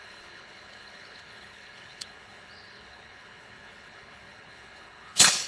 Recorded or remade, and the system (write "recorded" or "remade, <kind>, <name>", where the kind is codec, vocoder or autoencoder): remade, codec, HILCodec